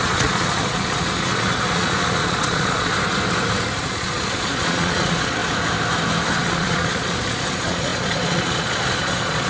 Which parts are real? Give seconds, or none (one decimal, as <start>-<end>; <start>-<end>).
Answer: 2.9-3.8; 5.4-6.4